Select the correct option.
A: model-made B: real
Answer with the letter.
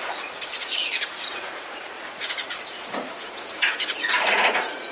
A